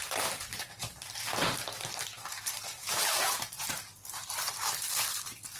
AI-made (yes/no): yes